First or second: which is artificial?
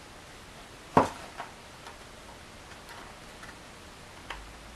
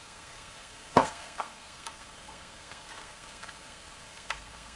second